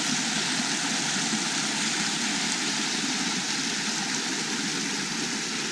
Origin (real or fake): real